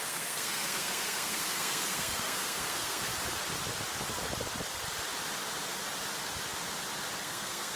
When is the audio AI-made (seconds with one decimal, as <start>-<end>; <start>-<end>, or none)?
0.0-3.1; 7.2-7.8